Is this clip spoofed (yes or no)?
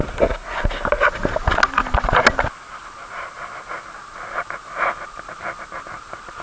no